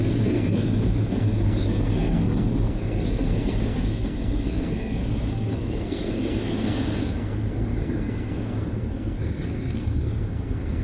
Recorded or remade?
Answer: remade